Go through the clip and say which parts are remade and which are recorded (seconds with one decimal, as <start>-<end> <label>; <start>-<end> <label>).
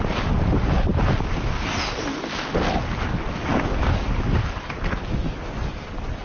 0.0-6.2 recorded